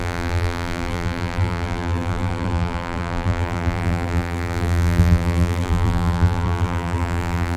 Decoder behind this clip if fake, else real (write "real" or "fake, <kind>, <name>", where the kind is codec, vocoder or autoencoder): fake, vocoder, BigVGAN v2